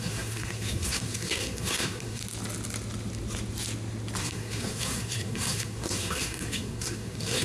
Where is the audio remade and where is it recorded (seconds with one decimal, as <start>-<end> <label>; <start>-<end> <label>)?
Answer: 0.0-2.2 remade; 2.2-4.2 recorded; 4.2-7.4 remade